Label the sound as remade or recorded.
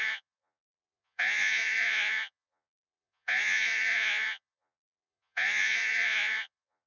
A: remade